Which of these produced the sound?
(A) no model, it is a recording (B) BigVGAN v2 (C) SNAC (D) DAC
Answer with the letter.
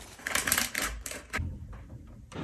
B